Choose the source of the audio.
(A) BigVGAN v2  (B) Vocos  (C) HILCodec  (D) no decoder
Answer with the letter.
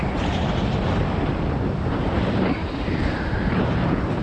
A